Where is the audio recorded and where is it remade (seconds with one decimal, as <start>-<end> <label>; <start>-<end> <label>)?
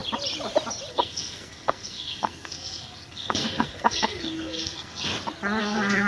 0.0-0.9 recorded; 0.9-5.1 remade; 5.1-5.6 recorded; 5.6-6.1 remade